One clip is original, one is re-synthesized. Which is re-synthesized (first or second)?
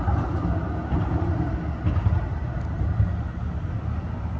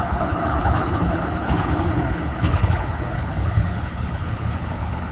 second